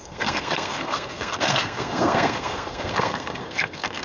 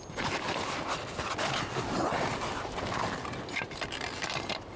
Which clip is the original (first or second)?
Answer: second